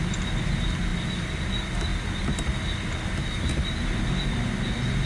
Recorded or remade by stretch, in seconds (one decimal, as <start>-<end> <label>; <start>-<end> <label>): 0.0-5.1 recorded